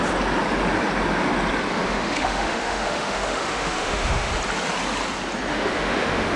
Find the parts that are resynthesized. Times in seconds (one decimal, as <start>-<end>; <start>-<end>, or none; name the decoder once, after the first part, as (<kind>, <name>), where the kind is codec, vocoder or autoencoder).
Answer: 1.7-4.3 (autoencoder, DAC-VAE); 5.5-6.4